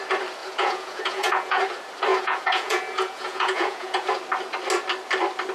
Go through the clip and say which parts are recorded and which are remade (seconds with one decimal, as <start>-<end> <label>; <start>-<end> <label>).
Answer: 0.0-0.4 recorded; 0.4-1.6 remade; 1.6-2.1 recorded; 2.1-4.2 remade; 4.2-5.5 recorded